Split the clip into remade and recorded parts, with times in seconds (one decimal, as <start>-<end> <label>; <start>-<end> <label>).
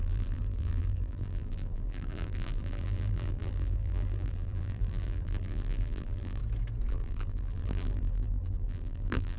0.0-6.4 remade; 6.4-6.9 recorded; 6.9-9.4 remade